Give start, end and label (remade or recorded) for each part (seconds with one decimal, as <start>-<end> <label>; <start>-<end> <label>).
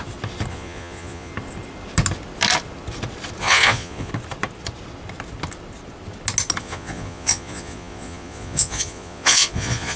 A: 0.0-0.5 recorded; 0.5-1.3 remade; 1.3-3.4 recorded; 3.4-4.1 remade; 4.1-6.6 recorded; 6.6-10.0 remade